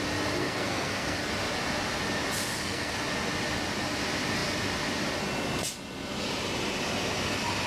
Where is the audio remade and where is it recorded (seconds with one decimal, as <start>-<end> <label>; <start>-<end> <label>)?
0.0-0.4 recorded; 0.4-1.2 remade; 1.2-2.5 recorded; 2.5-3.0 remade; 3.0-7.7 recorded